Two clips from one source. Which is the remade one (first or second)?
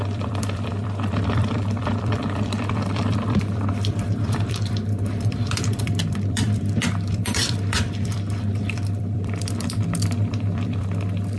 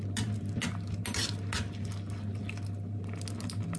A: first